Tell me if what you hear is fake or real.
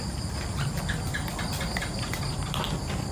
real